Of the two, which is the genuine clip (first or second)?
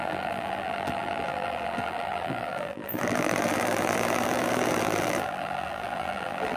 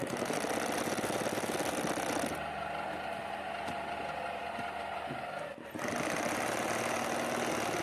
second